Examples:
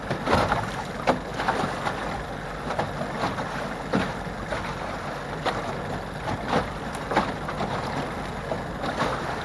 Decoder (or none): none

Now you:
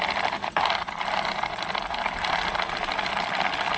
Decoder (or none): none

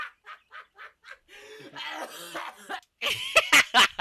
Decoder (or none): none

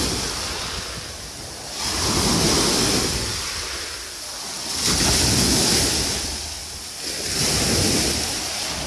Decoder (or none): none